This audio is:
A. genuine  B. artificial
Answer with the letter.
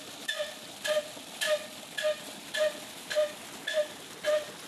A